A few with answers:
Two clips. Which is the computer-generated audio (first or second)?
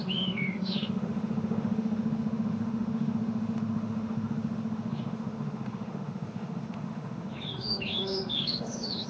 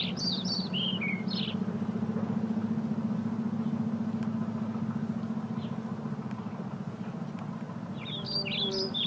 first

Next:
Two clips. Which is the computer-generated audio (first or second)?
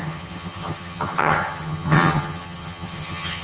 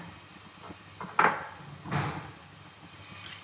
first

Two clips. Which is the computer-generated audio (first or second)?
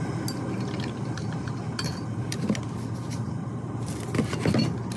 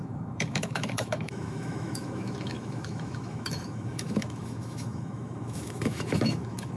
second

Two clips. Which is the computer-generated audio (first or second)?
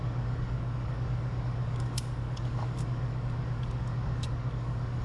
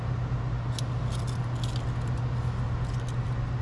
first